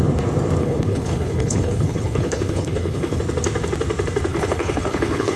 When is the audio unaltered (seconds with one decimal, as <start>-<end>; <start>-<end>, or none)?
0.0-0.6; 3.2-4.3